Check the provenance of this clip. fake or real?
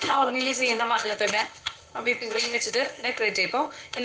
fake